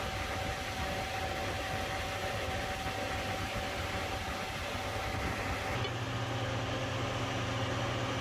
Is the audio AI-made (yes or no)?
no